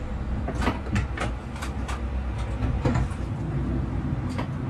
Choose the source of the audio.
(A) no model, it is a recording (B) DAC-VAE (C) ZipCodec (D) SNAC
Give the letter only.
A